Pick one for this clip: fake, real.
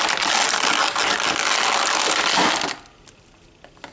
real